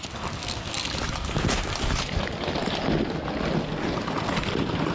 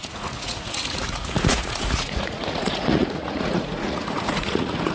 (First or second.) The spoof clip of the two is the second